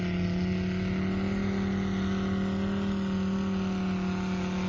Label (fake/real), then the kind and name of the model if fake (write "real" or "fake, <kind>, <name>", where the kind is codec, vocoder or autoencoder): real